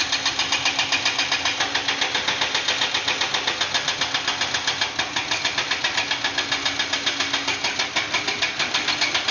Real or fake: real